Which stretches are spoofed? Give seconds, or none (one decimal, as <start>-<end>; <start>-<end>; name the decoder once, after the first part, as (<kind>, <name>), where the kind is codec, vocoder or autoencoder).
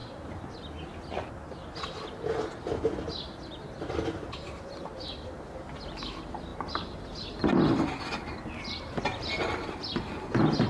none